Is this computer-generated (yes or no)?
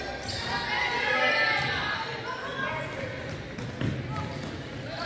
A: no